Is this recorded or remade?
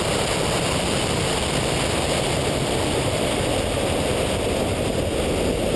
recorded